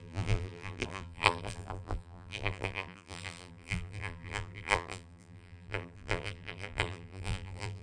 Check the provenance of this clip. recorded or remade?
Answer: remade